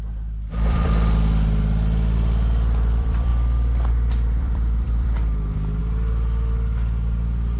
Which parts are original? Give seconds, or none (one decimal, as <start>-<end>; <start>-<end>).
3.3-3.9; 5.8-7.6